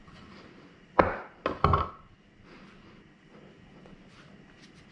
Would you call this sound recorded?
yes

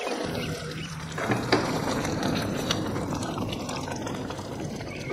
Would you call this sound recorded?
no